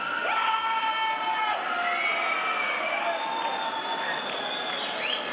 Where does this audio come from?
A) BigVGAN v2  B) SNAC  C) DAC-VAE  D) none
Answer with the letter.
D